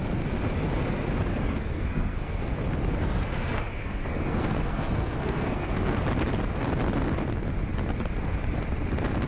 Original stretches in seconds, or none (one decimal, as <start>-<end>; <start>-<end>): 0.0-1.3; 2.4-3.0; 6.0-9.3